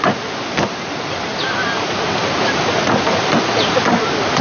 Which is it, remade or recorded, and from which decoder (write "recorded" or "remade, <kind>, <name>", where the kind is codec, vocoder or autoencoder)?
recorded